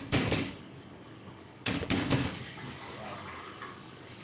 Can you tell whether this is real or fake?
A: fake